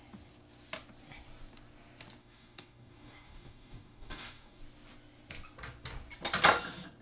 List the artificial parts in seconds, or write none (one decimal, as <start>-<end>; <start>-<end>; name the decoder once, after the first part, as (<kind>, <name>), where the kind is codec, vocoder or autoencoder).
2.2-4.6 (codec, DAC)